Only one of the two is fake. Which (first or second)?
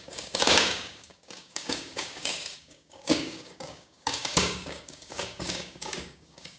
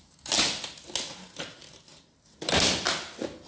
first